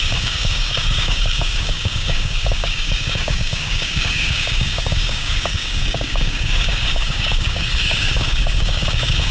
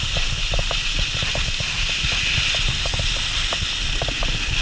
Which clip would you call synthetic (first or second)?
first